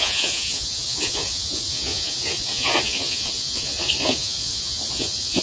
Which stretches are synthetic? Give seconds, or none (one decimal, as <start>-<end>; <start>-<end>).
0.0-5.4